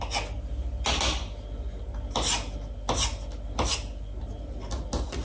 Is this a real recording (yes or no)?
yes